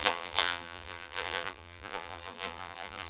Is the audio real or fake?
fake